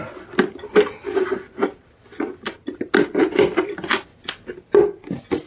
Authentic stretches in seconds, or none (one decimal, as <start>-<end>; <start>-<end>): 0.0-5.5